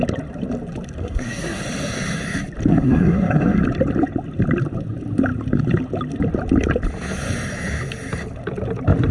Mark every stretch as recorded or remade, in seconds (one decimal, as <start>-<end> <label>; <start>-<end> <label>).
0.0-1.0 recorded; 1.0-1.6 remade; 1.6-2.7 recorded; 2.7-3.6 remade; 3.6-9.1 recorded